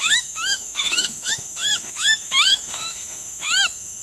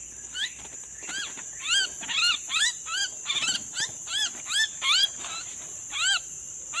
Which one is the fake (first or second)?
first